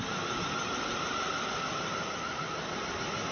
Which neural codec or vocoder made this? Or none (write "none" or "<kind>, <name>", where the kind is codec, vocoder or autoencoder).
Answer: none